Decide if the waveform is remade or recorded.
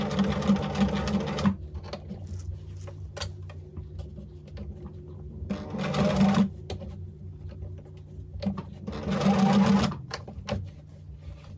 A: recorded